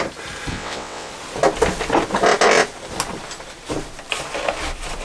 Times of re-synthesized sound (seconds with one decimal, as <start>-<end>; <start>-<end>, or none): 0.5-1.1